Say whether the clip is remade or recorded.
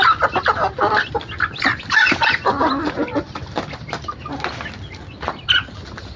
recorded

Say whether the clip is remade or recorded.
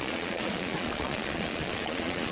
remade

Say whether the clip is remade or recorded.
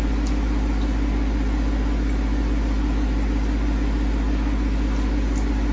recorded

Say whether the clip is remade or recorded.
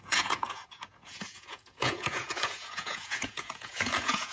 remade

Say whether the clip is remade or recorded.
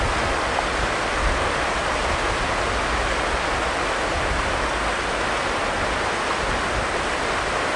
recorded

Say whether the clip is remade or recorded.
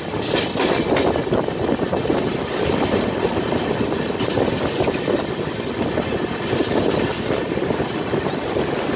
recorded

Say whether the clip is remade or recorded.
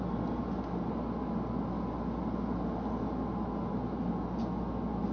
recorded